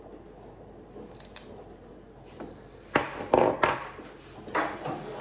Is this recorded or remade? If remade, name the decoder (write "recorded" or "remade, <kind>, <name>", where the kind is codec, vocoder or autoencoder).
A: recorded